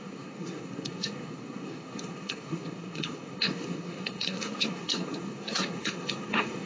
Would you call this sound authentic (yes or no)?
no